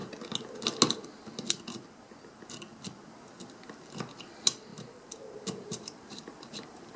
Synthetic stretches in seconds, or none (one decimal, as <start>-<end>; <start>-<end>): 4.7-7.0